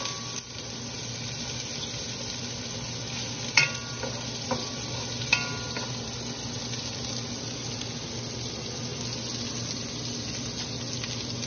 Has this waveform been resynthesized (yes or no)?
no